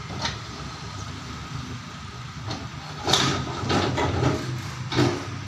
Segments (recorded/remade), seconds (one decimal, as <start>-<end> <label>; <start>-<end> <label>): 0.0-5.5 recorded